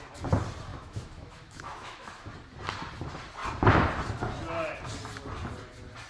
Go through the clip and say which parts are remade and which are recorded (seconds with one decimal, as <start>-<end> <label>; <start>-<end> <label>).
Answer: 0.0-0.7 recorded; 0.7-2.1 remade; 2.1-6.1 recorded